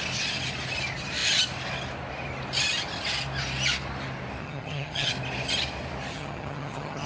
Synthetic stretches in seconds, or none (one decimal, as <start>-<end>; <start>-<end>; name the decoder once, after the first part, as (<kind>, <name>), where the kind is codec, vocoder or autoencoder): 4.4-5.1 (vocoder, HiFi-GAN); 6.1-7.1